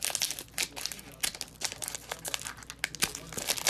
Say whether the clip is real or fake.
real